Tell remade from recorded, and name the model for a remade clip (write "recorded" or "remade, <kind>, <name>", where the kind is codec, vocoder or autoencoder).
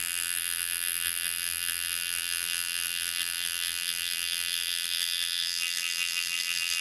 remade, vocoder, BigVGAN v2